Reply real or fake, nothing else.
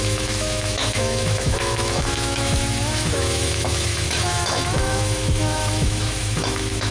fake